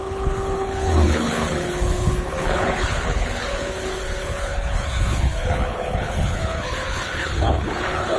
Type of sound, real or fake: fake